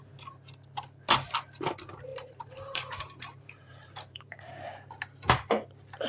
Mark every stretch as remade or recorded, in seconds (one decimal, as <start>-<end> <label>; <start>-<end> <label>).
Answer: 0.0-2.1 recorded; 2.1-4.5 remade; 4.5-6.1 recorded